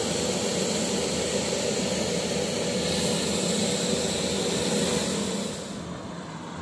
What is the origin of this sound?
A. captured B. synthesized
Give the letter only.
A